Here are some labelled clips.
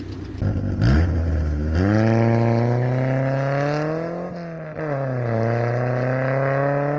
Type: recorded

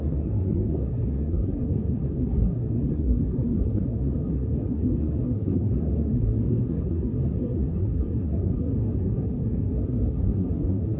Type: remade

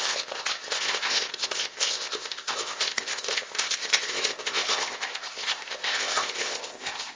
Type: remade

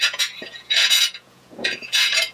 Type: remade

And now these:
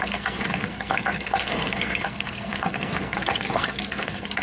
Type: remade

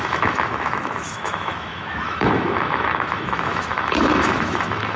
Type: remade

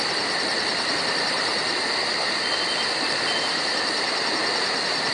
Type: recorded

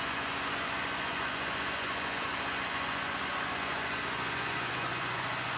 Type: remade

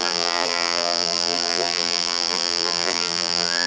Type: remade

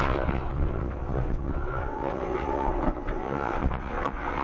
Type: remade